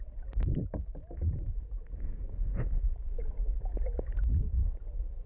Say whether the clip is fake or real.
real